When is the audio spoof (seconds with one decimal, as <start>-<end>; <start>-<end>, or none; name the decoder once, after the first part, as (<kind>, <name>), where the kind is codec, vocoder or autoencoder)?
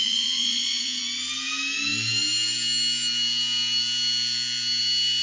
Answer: 0.0-1.0 (vocoder, Vocos)